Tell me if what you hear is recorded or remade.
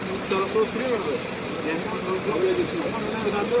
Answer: recorded